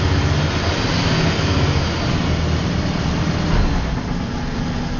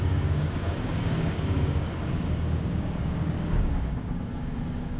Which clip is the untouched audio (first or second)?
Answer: first